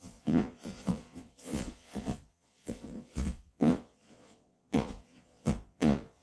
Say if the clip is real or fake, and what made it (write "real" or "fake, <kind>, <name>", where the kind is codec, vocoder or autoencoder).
fake, vocoder, Vocos